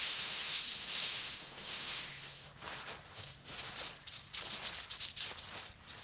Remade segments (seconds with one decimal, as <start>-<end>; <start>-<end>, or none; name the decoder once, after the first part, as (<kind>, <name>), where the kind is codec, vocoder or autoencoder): 0.0-2.5 (autoencoder, DAC-VAE); 3.1-3.7